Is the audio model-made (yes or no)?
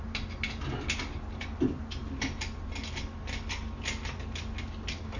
no